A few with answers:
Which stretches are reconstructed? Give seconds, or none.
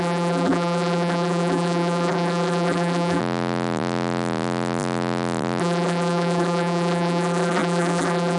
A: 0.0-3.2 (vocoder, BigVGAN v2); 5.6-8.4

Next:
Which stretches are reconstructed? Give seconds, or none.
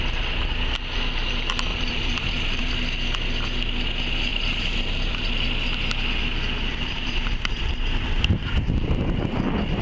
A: 1.7-2.6 (vocoder, BigVGAN v2); 4.3-5.3; 6.7-9.2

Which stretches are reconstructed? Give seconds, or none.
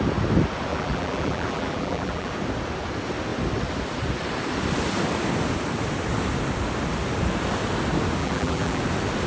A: 0.7-2.3 (vocoder, BigVGAN v2); 8.2-8.8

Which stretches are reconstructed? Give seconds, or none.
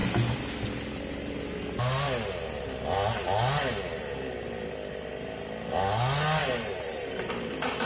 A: 6.4-7.3 (vocoder, BigVGAN v2)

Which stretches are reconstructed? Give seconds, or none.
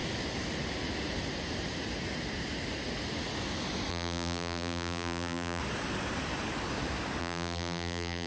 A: 3.9-5.6 (vocoder, BigVGAN v2); 7.2-8.3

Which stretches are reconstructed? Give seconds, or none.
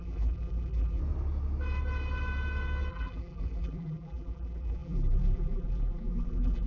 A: 0.0-1.0 (vocoder, BigVGAN v2); 2.9-6.7